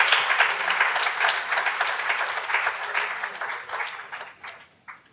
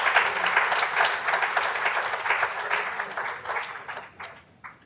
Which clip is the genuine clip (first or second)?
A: second